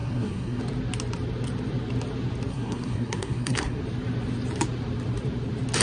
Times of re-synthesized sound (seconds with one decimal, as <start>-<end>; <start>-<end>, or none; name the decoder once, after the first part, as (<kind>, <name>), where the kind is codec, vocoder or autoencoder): 0.0-0.6 (codec, SNAC); 2.5-3.8